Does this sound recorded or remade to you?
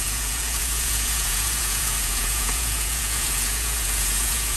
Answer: remade